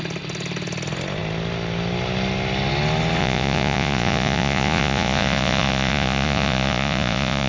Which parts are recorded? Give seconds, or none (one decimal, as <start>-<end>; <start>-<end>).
0.0-3.2